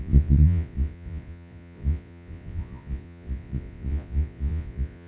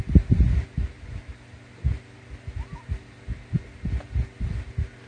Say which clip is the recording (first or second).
second